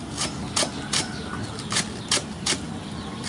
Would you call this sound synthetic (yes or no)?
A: no